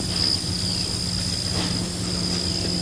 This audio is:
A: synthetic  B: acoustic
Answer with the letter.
B